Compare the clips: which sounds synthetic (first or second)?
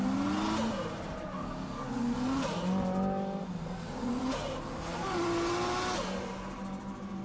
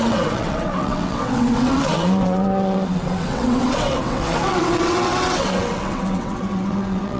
second